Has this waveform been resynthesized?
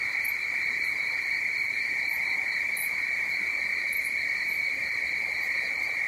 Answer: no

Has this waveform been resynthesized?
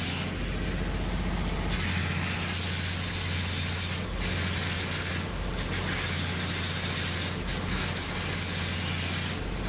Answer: no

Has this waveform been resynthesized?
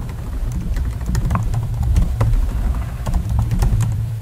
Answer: yes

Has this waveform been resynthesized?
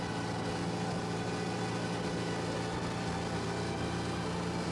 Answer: no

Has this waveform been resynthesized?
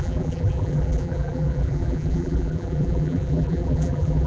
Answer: yes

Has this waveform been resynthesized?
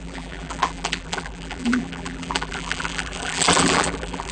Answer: yes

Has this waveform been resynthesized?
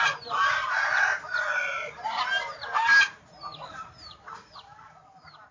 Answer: no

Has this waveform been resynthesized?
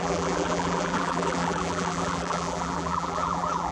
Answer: yes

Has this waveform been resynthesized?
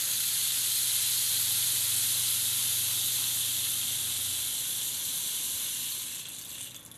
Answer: no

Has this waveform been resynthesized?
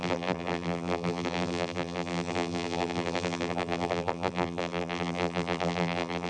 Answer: yes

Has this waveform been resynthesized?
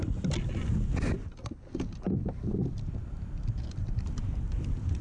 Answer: no